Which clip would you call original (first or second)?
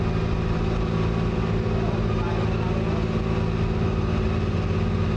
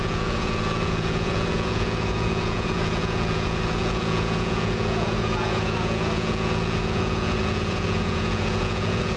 first